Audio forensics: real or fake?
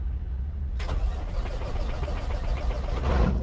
fake